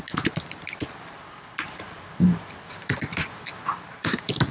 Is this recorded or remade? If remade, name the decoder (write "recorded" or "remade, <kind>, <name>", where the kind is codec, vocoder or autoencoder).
remade, vocoder, BigVGAN v2